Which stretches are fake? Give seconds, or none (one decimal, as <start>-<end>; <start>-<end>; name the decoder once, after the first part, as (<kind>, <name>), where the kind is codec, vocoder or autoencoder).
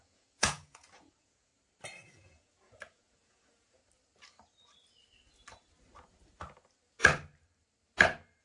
0.0-1.5 (vocoder, Vocos); 2.0-3.8